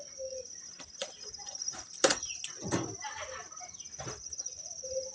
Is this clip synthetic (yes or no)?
no